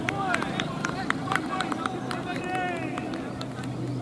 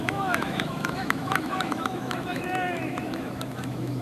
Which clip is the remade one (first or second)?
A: second